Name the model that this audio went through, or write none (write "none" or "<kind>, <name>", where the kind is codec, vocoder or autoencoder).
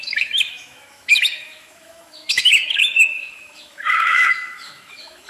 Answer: autoencoder, DAC-VAE